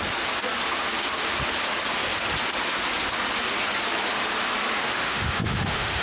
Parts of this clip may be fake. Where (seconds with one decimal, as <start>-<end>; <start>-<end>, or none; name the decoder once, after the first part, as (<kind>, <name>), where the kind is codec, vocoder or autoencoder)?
4.8-6.0 (autoencoder, DAC-VAE)